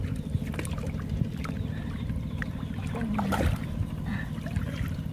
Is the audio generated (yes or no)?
no